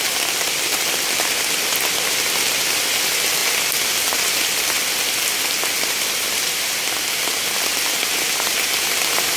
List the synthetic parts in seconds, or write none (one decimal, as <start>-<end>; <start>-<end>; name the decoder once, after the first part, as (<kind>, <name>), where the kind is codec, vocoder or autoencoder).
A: none